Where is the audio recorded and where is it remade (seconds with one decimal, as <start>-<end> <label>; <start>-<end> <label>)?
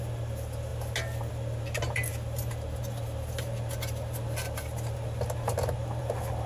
0.0-6.5 recorded